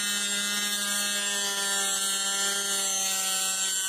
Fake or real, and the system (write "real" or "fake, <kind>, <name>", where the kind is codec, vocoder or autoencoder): real